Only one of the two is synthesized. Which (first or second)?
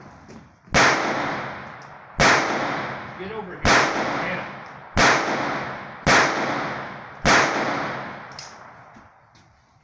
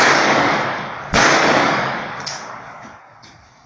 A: second